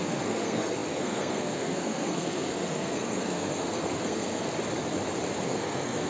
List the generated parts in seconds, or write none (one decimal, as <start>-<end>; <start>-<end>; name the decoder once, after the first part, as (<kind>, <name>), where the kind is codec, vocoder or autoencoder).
0.0-4.5 (codec, SNAC); 5.4-6.1